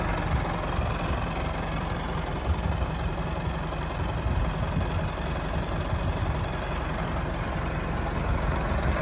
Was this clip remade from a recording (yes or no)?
no